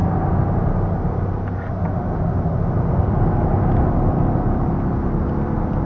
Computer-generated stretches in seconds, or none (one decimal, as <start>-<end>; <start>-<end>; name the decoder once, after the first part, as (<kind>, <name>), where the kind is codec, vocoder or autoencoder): none